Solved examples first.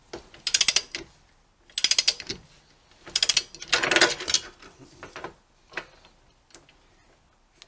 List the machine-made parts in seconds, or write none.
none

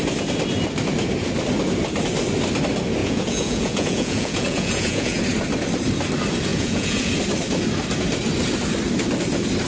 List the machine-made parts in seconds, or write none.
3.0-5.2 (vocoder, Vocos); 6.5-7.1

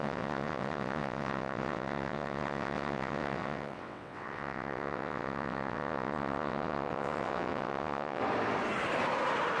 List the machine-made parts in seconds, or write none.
0.0-8.2 (vocoder, WaveNeXt)

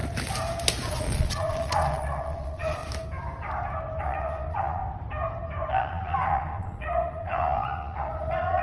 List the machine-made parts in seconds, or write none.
0.9-2.8 (vocoder, Vocos); 4.0-4.8; 5.7-8.6